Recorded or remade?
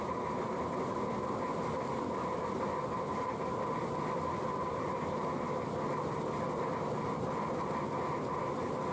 recorded